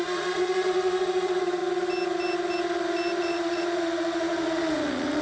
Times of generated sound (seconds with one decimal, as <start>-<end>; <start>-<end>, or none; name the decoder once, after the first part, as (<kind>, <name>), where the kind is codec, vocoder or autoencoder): 0.0-1.6 (vocoder, Vocos); 3.2-5.2